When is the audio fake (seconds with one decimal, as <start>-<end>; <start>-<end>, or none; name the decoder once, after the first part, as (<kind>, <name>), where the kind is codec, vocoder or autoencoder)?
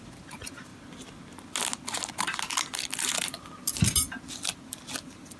none